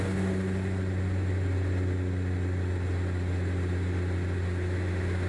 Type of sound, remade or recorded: recorded